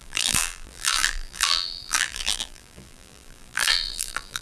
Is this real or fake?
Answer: fake